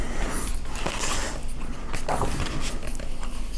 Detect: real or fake real